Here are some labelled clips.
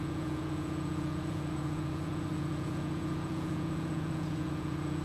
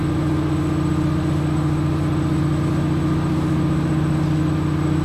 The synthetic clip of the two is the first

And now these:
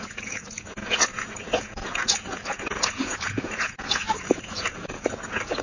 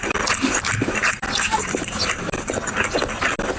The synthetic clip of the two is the first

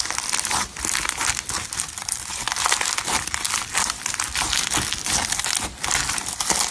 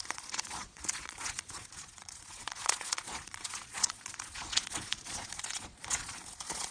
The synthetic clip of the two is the second